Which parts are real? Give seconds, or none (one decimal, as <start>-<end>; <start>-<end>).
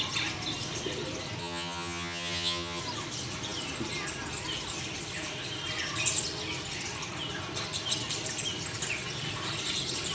0.0-1.4; 2.8-10.1